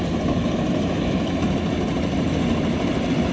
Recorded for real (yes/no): yes